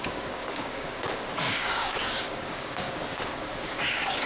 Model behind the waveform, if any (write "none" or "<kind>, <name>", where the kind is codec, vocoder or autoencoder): codec, DAC